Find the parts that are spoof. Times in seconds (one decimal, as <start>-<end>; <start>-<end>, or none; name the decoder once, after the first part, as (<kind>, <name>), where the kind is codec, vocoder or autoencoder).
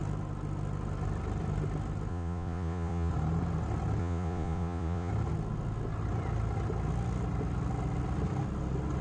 2.1-3.1 (vocoder, Vocos); 4.0-5.1